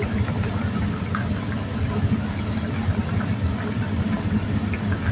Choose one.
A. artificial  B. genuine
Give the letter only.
B